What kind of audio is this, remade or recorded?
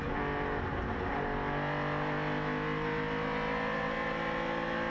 recorded